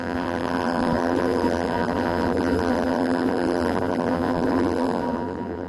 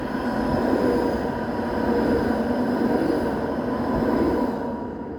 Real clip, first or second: second